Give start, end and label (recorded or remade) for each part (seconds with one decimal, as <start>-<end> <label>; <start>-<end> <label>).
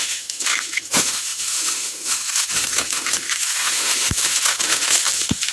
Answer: 0.0-5.5 remade